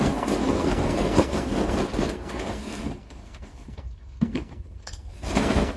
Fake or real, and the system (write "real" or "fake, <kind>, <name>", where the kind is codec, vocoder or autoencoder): fake, codec, SNAC